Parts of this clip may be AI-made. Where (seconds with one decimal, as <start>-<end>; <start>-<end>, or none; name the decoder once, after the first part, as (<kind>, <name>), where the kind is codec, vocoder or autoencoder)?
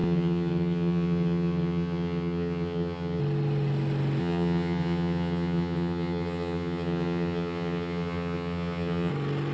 0.0-3.2 (vocoder, HiFi-GAN); 4.2-9.1